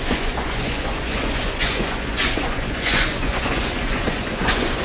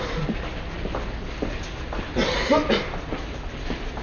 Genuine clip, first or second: second